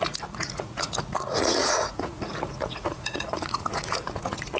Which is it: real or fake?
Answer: fake